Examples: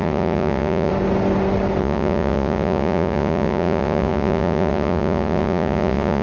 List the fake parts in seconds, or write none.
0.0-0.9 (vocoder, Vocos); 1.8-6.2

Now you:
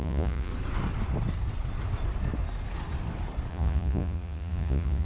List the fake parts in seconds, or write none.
0.0-0.5 (vocoder, Vocos); 3.5-5.0

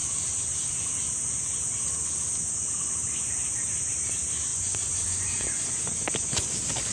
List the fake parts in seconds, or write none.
4.5-6.4 (vocoder, Vocos)

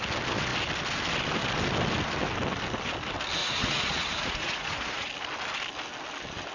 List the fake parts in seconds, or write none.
3.4-5.1 (vocoder, Vocos)

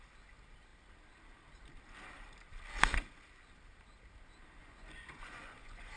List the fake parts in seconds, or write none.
4.6-6.0 (vocoder, Vocos)

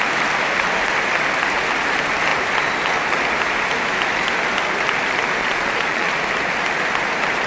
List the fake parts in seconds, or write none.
5.4-6.1 (vocoder, Vocos)

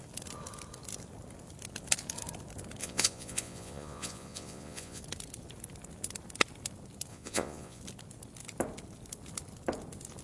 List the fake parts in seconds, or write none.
2.8-5.0 (vocoder, Vocos); 7.1-7.8

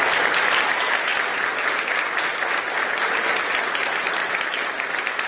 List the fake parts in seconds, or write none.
none